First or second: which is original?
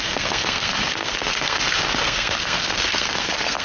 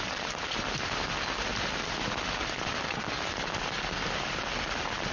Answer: second